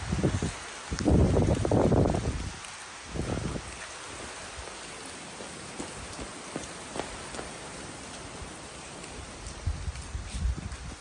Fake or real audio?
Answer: real